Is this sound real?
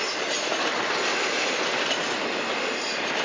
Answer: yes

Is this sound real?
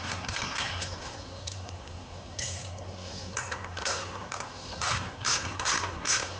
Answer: no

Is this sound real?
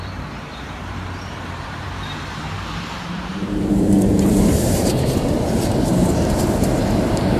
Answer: no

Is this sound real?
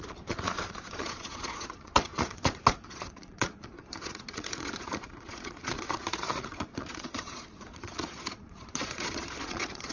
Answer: no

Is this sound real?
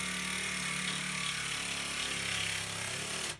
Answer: yes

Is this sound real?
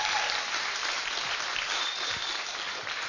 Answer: no